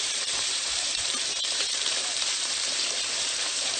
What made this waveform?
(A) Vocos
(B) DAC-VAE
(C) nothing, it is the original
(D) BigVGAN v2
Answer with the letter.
D